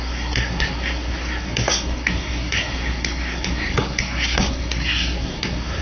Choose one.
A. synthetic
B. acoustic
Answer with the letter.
A